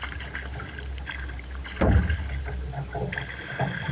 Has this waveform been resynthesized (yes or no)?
no